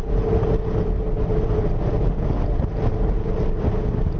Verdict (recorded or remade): recorded